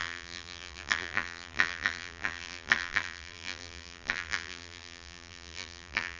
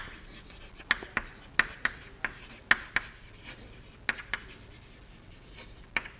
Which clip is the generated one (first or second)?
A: first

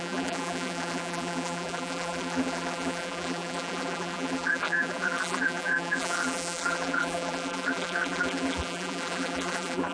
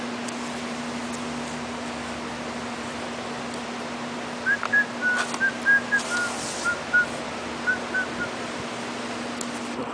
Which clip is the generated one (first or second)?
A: first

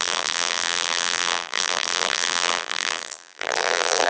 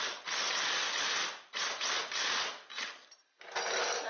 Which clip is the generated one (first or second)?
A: first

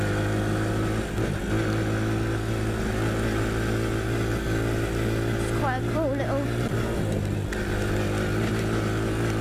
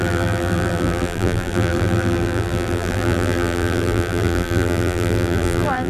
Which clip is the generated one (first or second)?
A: second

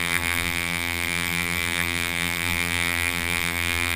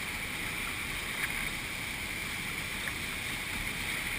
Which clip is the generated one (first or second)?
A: first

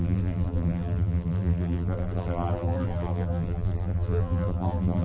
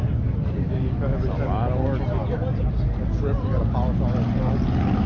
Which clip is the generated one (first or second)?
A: first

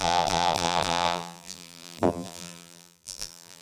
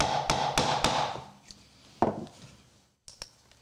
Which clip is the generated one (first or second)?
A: first